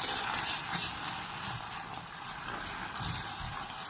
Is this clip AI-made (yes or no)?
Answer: no